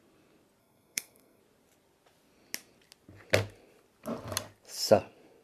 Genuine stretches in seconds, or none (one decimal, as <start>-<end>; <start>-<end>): 0.0-0.6; 1.4-5.4